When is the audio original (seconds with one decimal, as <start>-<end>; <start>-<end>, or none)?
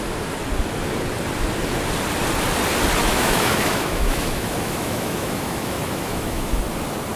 0.0-3.0; 6.6-7.2